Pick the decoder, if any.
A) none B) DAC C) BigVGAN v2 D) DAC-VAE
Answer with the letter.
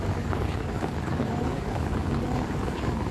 B